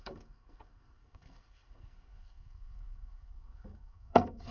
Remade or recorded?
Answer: remade